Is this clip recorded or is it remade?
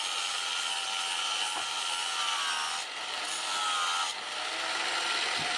recorded